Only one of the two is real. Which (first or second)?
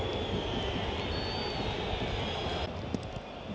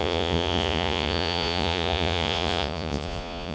first